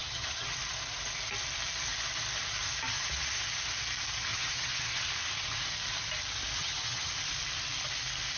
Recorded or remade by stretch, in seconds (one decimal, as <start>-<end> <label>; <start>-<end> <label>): 0.0-0.6 remade; 0.6-4.3 recorded; 4.3-5.1 remade; 5.1-6.6 recorded; 6.6-7.1 remade; 7.1-8.4 recorded